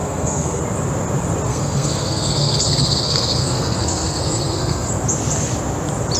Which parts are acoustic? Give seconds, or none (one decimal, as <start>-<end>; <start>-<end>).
0.6-1.5; 4.9-6.2